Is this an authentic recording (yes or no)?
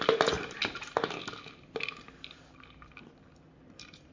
yes